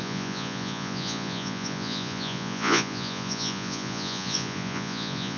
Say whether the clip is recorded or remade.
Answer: remade